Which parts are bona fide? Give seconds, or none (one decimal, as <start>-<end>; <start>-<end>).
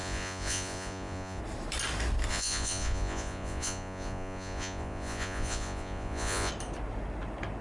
1.4-2.3; 6.5-7.6